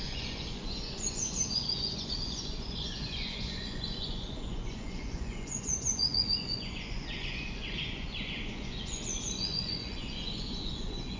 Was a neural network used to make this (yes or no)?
yes